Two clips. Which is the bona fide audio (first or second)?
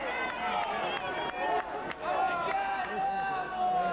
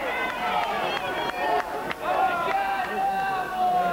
first